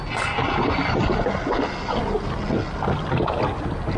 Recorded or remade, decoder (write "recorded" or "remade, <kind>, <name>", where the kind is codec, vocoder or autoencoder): recorded